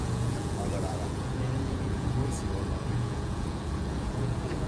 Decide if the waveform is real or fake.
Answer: fake